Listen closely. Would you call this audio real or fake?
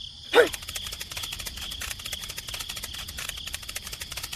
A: real